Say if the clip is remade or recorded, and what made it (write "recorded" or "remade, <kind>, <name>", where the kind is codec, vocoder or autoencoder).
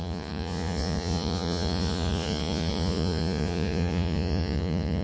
remade, vocoder, Vocos